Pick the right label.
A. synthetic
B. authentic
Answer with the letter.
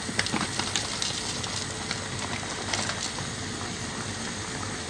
B